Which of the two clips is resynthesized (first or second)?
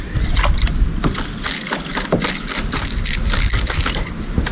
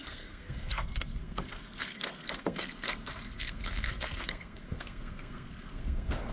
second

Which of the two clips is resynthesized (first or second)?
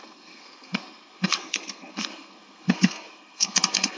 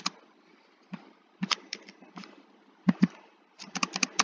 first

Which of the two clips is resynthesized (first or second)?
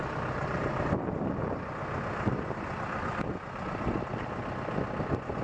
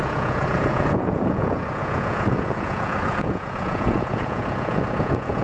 second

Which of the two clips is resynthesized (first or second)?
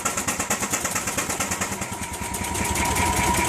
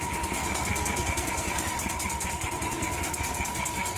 second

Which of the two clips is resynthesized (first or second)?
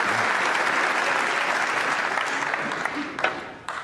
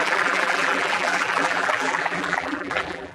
second